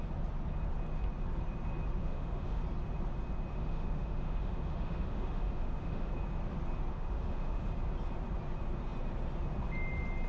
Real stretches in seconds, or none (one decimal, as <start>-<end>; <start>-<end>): 0.0-2.0; 2.6-3.5; 6.1-6.9; 7.7-10.3